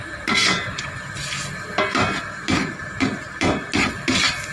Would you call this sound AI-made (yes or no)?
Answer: no